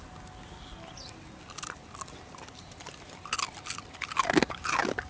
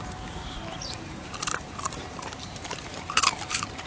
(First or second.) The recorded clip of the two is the first